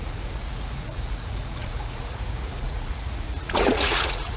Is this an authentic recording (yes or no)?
no